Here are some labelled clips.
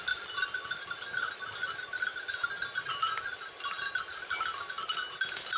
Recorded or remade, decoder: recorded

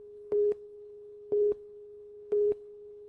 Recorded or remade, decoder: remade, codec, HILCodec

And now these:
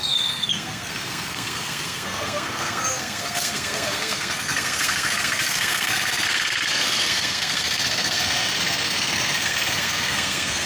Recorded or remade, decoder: remade, codec, SNAC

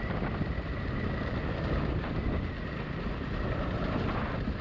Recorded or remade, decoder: recorded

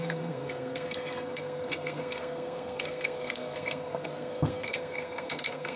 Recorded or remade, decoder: remade, codec, SNAC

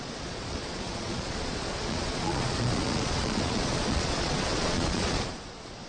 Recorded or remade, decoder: remade, vocoder, Vocos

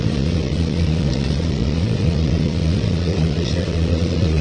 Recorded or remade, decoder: remade, vocoder, Vocos